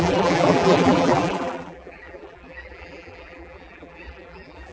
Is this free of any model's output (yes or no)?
no